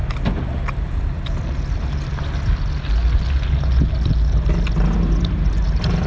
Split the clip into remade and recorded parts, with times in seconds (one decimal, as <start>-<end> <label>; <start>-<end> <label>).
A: 0.0-6.1 recorded